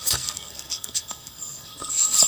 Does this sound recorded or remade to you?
remade